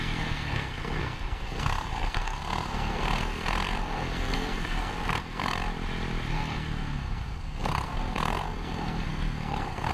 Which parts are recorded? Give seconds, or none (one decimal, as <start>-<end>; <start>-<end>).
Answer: 5.5-6.3